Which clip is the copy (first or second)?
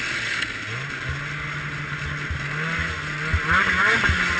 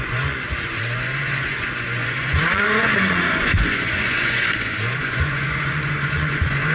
second